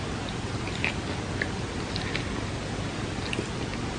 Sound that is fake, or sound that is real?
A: real